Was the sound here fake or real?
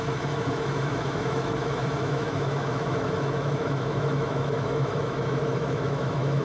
fake